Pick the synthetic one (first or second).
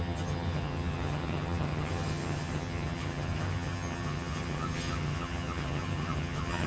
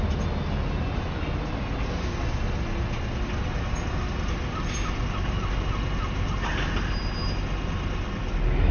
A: first